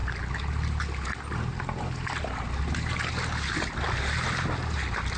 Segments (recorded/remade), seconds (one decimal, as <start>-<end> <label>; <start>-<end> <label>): 0.0-5.2 recorded